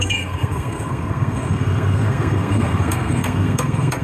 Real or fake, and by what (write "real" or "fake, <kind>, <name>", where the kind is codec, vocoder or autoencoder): fake, codec, SNAC